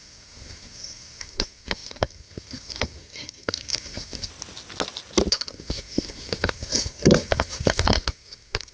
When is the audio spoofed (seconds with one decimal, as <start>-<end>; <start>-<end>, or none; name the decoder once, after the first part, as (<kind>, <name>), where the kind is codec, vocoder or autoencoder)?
0.0-4.3 (codec, SNAC); 5.3-8.7